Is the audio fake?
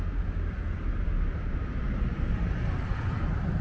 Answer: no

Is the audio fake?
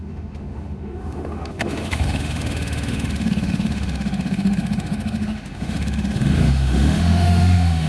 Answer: yes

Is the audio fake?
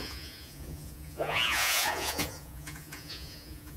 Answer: yes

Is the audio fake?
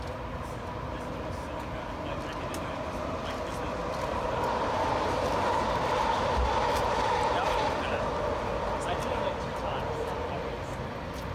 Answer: no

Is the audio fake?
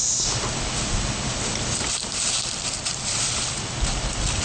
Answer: no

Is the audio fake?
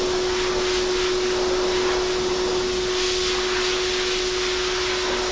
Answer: no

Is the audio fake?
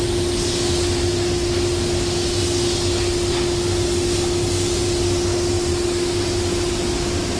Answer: no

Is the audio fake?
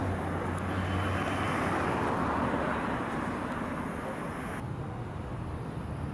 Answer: no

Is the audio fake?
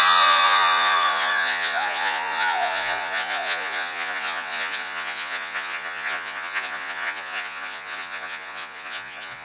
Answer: yes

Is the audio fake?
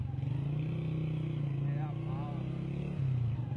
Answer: no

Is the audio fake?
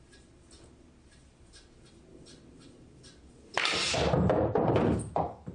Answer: no